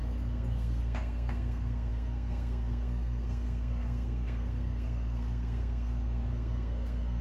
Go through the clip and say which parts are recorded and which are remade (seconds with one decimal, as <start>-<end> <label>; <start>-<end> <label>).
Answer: 0.0-7.2 remade